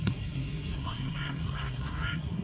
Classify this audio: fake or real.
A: fake